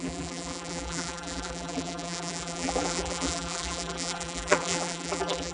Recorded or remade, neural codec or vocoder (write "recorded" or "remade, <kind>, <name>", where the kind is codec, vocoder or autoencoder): remade, vocoder, BigVGAN v2